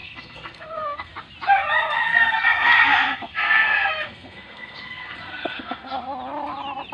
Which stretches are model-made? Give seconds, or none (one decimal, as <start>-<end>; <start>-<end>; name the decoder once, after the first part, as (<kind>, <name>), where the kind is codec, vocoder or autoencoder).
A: 0.0-1.1 (codec, SNAC); 1.8-5.9